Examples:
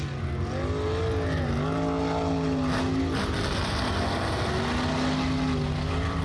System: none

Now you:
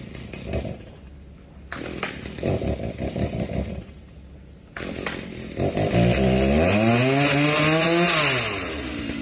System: none